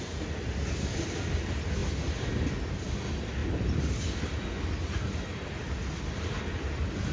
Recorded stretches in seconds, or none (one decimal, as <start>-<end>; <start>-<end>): 0.0-7.1